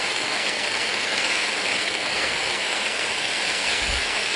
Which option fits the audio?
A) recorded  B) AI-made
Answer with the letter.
B